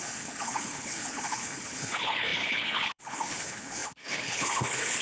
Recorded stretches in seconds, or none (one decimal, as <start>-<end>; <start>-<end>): none